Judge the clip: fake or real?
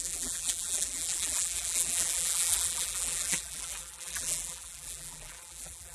fake